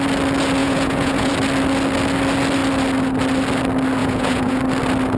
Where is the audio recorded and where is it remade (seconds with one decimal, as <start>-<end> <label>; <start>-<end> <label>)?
0.0-0.6 recorded; 0.6-1.3 remade; 1.3-4.0 recorded; 4.0-4.6 remade; 4.6-5.2 recorded